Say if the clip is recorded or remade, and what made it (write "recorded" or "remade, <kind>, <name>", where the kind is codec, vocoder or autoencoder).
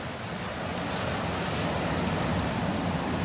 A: recorded